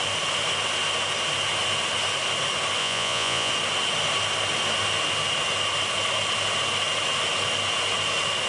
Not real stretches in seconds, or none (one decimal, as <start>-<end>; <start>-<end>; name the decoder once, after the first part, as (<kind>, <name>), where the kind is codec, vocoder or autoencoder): 2.8-3.5 (vocoder, Vocos)

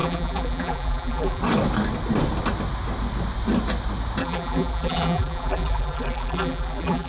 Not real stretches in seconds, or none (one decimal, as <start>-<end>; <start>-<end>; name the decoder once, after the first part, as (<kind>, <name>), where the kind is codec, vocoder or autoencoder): 0.0-1.4 (vocoder, BigVGAN v2); 4.2-7.1

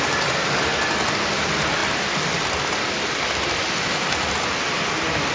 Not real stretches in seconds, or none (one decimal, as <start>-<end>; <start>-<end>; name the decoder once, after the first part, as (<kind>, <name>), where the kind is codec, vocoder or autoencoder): none

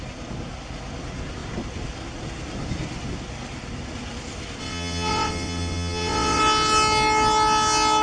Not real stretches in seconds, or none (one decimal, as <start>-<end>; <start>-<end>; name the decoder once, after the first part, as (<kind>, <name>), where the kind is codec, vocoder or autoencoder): 4.6-6.4 (vocoder, WaveNeXt)